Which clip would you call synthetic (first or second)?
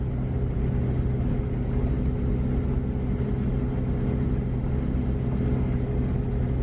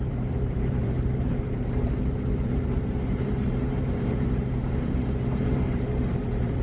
second